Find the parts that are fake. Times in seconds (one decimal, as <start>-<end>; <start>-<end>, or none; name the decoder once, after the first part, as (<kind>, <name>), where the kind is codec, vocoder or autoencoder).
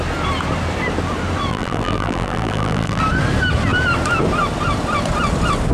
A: 1.5-3.0 (vocoder, BigVGAN v2)